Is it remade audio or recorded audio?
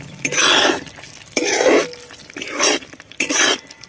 remade